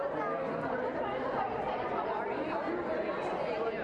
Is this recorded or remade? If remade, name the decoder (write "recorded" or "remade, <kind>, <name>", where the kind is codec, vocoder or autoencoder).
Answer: remade, vocoder, BigVGAN v2